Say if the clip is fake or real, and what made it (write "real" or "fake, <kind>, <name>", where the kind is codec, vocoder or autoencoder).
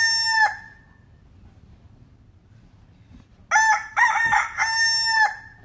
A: real